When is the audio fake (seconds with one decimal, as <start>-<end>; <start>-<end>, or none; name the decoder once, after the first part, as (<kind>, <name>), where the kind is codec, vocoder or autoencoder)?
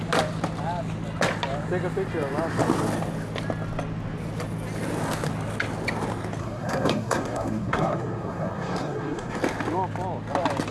6.4-9.4 (codec, SNAC)